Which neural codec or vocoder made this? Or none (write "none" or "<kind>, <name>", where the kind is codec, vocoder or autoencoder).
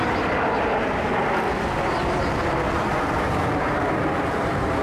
none